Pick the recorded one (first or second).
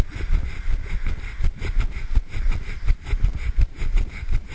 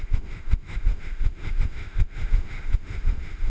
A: first